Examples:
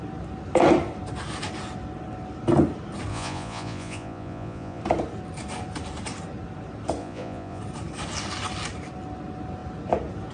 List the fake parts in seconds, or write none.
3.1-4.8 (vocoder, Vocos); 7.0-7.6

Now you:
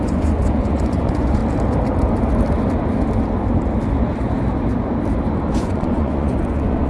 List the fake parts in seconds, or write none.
0.0-1.4 (vocoder, Vocos); 5.5-6.9

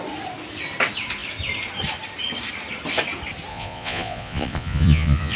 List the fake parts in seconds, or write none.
3.5-5.4 (vocoder, Vocos)

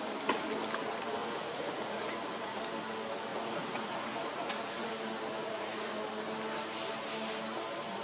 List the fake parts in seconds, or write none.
1.2-2.6 (vocoder, Vocos); 3.3-4.9; 5.4-5.9

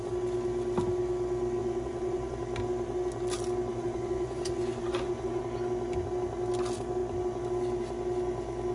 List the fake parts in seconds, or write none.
1.6-2.4 (vocoder, Vocos); 3.7-5.4

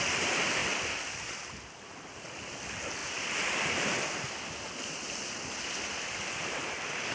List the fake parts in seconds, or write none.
none